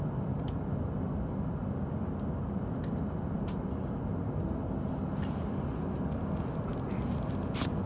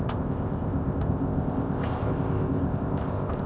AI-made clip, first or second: second